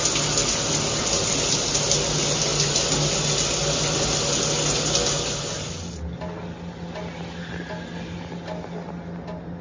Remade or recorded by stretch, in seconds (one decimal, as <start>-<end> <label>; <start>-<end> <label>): 0.0-9.6 recorded